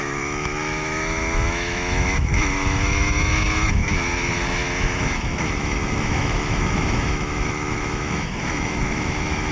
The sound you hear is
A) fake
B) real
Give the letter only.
A